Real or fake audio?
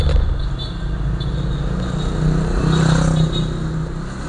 real